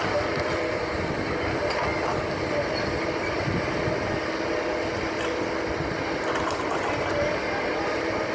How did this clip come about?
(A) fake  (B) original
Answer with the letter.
B